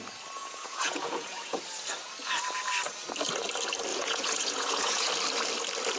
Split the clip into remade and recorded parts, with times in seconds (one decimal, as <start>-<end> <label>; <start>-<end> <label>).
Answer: 0.0-0.4 recorded; 0.4-1.6 remade; 1.6-3.9 recorded; 3.9-5.1 remade; 5.1-6.0 recorded